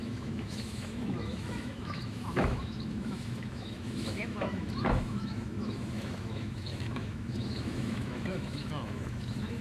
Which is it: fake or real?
fake